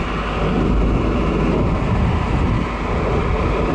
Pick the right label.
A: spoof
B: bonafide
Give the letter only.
B